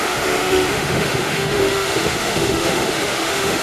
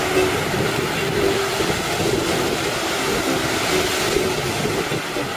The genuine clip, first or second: second